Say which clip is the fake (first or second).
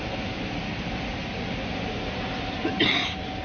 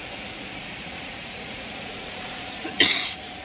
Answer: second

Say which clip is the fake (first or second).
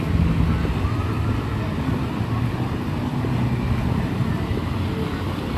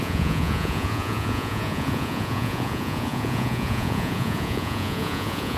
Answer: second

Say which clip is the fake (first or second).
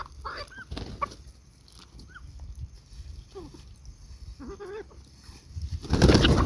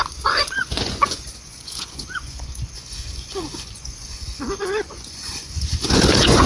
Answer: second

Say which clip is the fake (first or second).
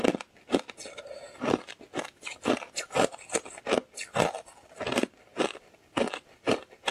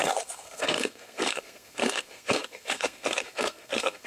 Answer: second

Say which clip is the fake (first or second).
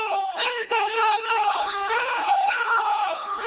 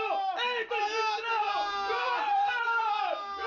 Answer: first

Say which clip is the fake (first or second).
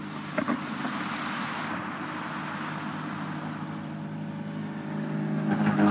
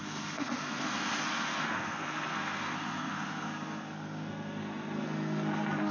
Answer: second